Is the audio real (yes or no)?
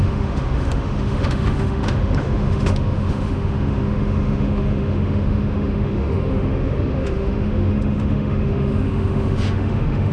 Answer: no